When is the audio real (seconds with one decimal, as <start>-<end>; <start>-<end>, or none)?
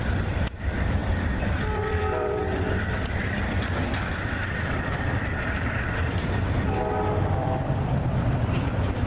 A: 2.4-4.1